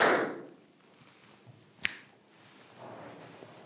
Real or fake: real